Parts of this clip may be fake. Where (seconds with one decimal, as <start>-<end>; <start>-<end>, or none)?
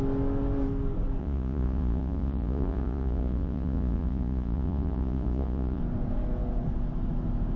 1.2-5.8